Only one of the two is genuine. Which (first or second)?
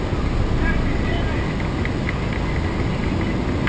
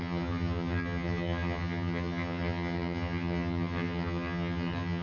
first